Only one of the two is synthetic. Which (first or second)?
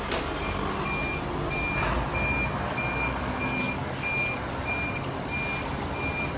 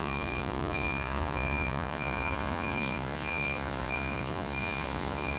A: second